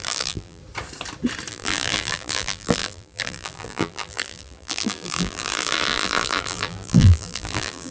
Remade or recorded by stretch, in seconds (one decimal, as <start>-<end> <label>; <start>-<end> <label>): 0.0-0.6 remade; 0.6-1.5 recorded; 1.5-7.9 remade

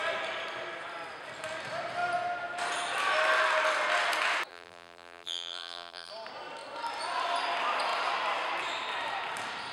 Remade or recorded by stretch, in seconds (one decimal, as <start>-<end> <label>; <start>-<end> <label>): 0.0-4.5 recorded; 4.5-6.1 remade; 6.1-9.7 recorded

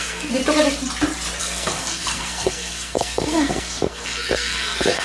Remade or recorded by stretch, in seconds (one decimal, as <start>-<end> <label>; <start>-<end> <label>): 0.0-0.4 remade; 0.4-1.4 recorded; 1.4-5.0 remade

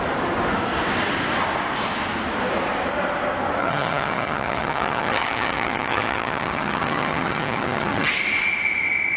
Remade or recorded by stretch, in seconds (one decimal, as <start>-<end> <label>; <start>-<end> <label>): 0.0-3.6 recorded; 3.6-8.1 remade; 8.1-9.2 recorded

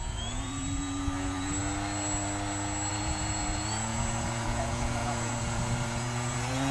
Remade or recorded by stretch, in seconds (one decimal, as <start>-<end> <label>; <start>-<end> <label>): 0.0-1.6 remade; 1.6-2.9 recorded; 2.9-6.7 remade

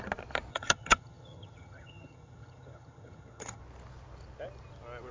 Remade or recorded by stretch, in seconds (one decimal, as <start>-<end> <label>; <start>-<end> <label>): 0.0-0.5 recorded; 0.5-3.6 remade; 3.6-5.1 recorded

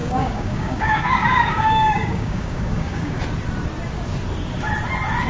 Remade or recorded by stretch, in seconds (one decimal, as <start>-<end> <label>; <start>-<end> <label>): 0.0-3.2 remade; 3.2-5.3 recorded

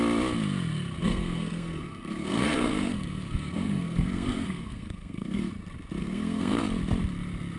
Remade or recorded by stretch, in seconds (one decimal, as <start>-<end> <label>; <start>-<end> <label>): 0.0-1.0 recorded; 1.0-5.5 remade; 5.5-6.0 recorded; 6.0-6.6 remade; 6.6-7.6 recorded